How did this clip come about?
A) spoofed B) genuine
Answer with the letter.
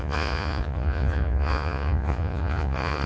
A